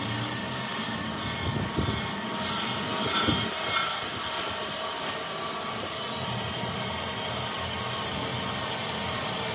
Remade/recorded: recorded